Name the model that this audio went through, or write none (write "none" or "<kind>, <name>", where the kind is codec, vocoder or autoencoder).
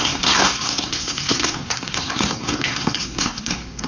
codec, SNAC